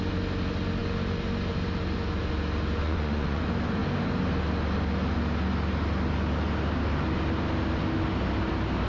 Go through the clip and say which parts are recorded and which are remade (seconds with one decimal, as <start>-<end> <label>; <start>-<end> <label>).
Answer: 0.0-2.8 recorded; 2.8-3.4 remade; 3.4-8.9 recorded